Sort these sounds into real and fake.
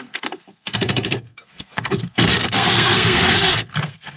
fake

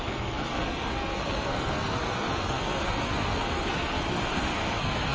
fake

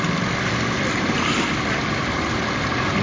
real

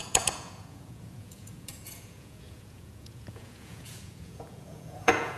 fake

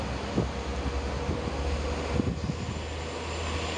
real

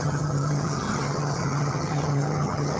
fake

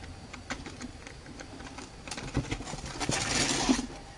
real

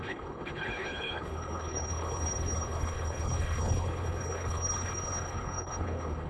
fake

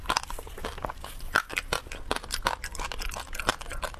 real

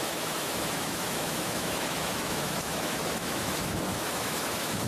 fake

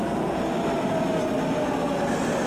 real